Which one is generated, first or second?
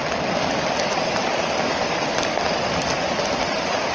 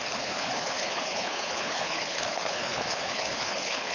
second